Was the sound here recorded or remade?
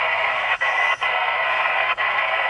remade